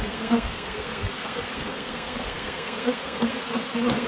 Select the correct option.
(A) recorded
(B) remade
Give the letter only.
B